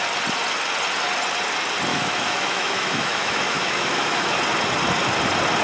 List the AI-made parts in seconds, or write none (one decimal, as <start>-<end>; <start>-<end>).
1.9-4.3